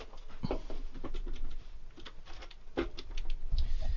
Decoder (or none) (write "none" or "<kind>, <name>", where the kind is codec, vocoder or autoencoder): none